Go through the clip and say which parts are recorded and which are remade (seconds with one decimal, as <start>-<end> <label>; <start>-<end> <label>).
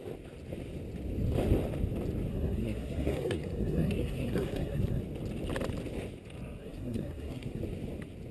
0.0-2.3 recorded; 2.3-5.0 remade; 5.0-6.6 recorded; 6.6-7.6 remade; 7.6-8.3 recorded